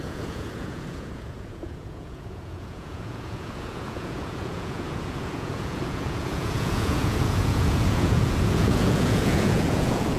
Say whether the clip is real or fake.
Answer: fake